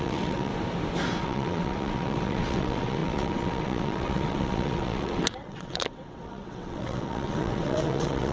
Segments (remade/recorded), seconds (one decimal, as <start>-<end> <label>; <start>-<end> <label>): 0.0-0.5 remade; 0.5-1.2 recorded; 1.2-8.3 remade

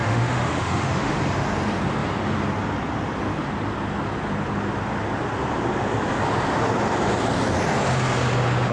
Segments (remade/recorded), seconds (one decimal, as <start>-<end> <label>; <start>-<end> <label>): 0.0-1.2 remade; 1.2-8.7 recorded

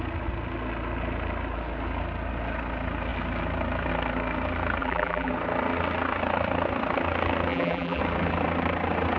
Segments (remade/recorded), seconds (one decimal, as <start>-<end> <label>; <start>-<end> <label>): 0.0-4.8 recorded; 4.8-5.3 remade; 5.3-7.5 recorded; 7.5-8.0 remade; 8.0-9.2 recorded

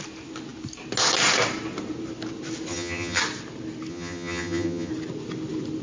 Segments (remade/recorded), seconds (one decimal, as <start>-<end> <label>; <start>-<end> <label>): 0.0-2.7 recorded; 2.7-3.2 remade; 3.2-3.9 recorded; 3.9-4.9 remade; 4.9-5.8 recorded

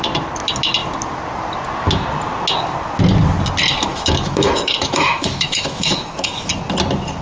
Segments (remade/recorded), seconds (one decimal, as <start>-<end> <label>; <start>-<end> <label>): 0.0-3.9 recorded; 3.9-6.5 remade; 6.5-7.2 recorded